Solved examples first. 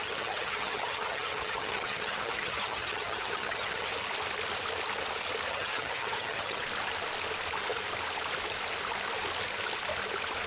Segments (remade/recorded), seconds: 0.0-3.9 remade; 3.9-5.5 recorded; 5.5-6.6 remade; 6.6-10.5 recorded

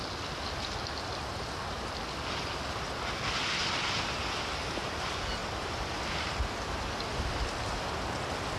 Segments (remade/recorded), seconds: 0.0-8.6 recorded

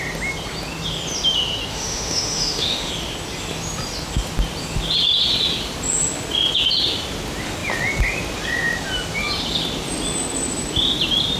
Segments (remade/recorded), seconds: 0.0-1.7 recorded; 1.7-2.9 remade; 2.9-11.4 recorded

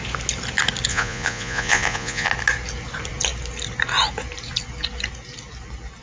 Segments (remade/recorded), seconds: 0.0-0.9 recorded; 0.9-2.3 remade; 2.3-6.0 recorded

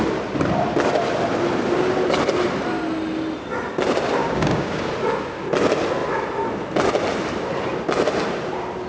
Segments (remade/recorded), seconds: 0.0-4.2 recorded; 4.2-4.9 remade; 4.9-8.9 recorded